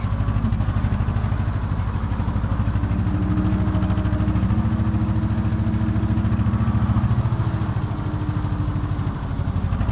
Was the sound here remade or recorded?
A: recorded